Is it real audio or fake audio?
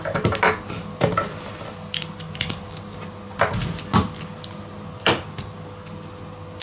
real